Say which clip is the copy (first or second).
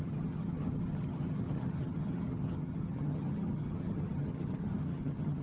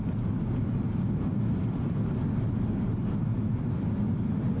first